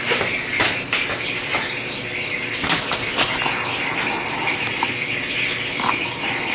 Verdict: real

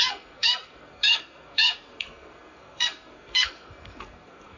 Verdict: fake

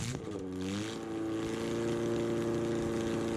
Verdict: real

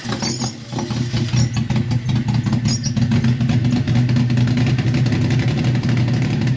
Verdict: real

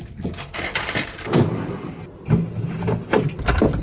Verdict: real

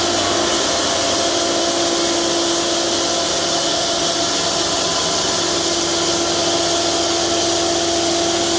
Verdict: real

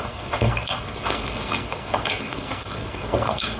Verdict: fake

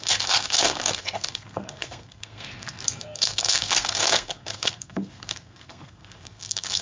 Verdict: fake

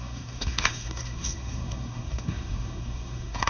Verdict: fake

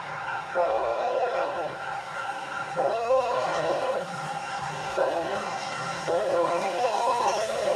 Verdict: fake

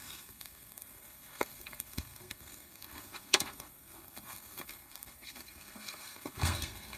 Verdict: fake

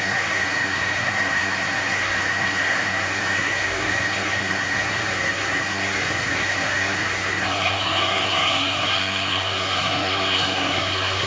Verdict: fake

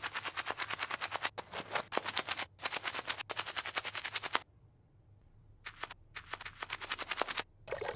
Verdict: real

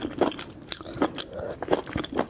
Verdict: real